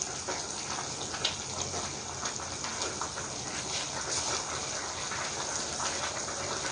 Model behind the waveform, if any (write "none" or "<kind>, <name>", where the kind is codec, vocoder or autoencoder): none